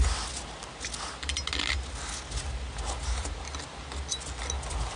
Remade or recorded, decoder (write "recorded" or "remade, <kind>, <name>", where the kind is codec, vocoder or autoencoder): recorded